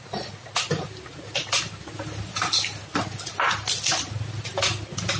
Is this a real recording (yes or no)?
yes